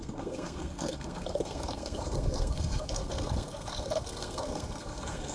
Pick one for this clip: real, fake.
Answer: fake